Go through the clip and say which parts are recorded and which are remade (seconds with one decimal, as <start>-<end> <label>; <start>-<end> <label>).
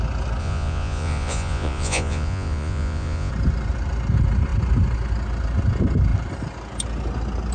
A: 0.0-0.4 recorded; 0.4-3.3 remade; 3.3-7.5 recorded